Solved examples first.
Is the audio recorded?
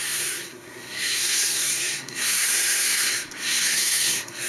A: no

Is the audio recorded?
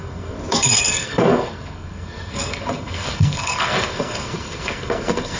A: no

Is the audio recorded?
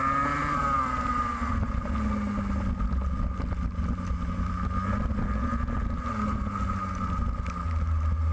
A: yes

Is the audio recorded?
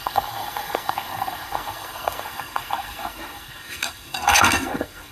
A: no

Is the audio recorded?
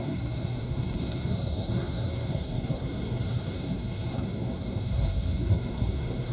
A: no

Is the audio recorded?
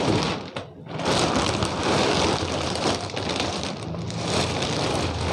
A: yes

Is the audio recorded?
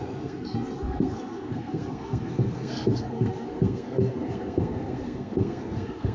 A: no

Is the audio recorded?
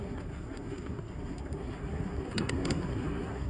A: no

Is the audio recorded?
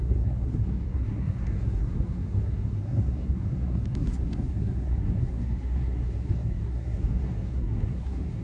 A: no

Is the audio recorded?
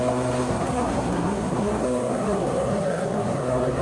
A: no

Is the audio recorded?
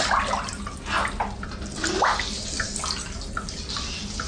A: yes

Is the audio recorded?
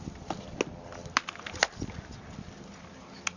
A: yes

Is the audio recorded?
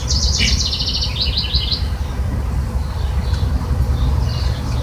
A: yes